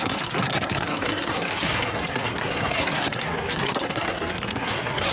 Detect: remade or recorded remade